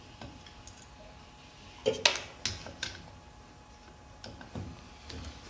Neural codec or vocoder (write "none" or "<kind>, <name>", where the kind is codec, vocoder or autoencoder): none